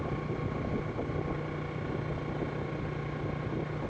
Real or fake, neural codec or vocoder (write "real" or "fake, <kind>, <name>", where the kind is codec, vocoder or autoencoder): real